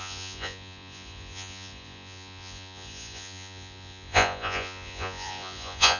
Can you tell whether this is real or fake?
fake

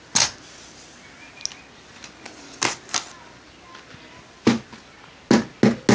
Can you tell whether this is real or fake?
real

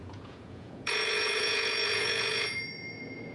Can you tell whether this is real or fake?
fake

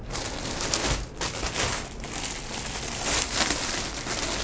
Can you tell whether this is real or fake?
real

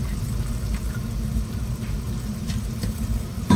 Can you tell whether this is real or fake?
fake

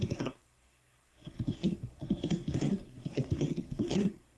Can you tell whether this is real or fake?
fake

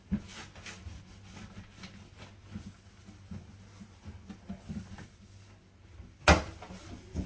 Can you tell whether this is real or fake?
real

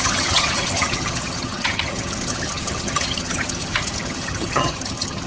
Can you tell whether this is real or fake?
fake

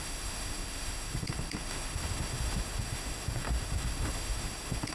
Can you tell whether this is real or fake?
fake